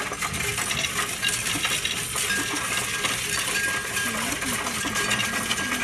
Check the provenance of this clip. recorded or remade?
recorded